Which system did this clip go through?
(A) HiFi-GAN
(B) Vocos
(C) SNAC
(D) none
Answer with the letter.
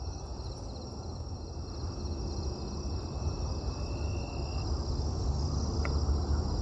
D